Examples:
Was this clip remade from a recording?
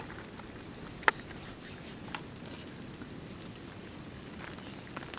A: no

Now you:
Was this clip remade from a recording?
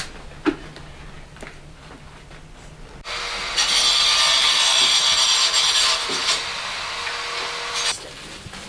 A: no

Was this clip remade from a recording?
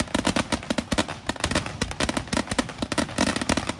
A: no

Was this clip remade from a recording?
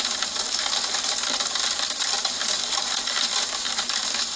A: no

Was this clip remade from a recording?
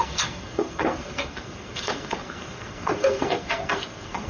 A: yes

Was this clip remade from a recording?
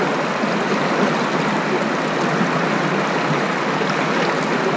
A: no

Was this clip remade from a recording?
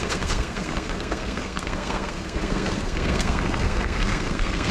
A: yes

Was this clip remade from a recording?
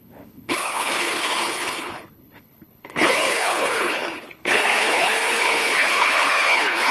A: yes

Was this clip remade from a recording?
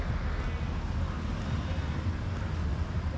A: no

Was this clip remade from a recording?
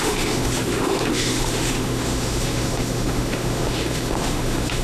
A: yes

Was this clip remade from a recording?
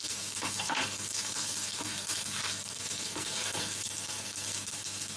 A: yes